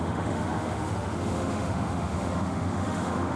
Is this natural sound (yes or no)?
no